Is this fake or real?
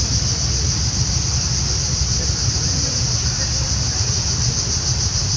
real